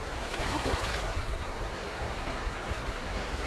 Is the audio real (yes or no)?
no